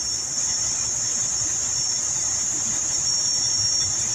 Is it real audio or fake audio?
fake